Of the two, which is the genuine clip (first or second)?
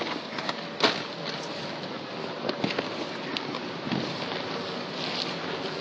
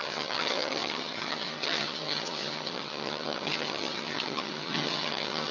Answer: first